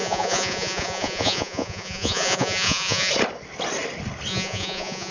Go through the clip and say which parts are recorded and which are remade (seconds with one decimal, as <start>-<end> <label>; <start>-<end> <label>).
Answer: 0.0-3.1 remade; 3.1-4.3 recorded; 4.3-5.1 remade